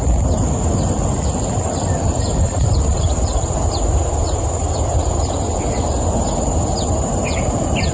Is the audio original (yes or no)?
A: yes